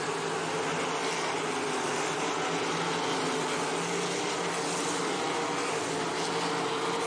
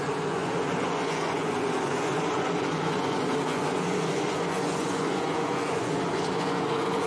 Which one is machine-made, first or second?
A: second